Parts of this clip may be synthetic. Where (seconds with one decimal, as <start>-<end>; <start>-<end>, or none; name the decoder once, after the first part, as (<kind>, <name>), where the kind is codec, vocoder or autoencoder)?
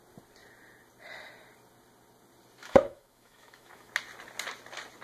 2.6-3.9 (autoencoder, DAC-VAE)